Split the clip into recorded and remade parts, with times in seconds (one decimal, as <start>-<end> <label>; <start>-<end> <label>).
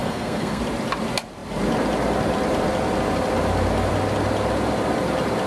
0.0-0.6 remade; 0.6-5.5 recorded